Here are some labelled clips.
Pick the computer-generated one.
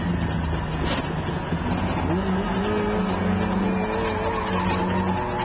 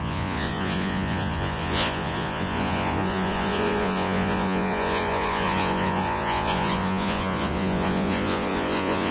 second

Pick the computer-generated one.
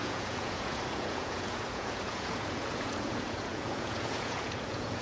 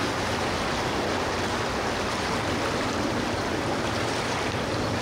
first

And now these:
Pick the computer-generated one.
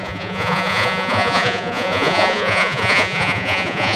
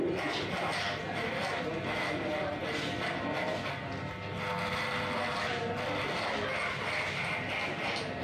first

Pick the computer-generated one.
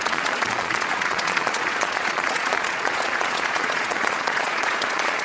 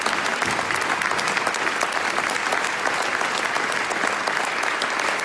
first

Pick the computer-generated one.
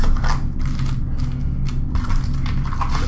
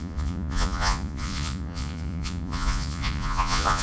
second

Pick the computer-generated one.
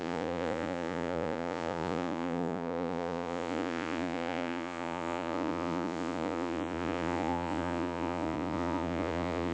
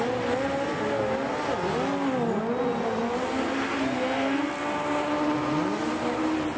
first